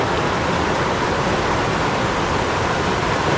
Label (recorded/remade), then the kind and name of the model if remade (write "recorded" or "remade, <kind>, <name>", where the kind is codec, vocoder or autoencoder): recorded